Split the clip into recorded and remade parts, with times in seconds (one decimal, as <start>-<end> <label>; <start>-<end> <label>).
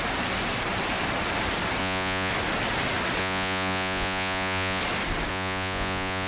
0.0-1.8 recorded; 1.8-2.3 remade; 2.3-3.2 recorded; 3.2-4.8 remade; 4.8-5.3 recorded; 5.3-6.3 remade